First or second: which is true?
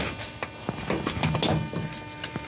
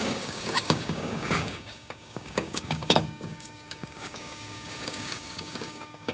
first